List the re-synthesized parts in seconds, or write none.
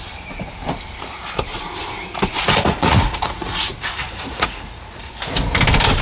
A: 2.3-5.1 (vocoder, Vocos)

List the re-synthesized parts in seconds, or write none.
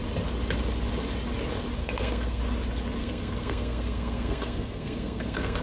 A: 1.8-2.4 (codec, SNAC); 3.0-5.6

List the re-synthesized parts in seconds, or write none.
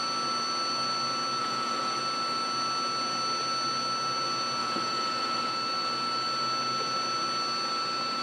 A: 1.4-2.0 (vocoder, Vocos); 4.6-5.5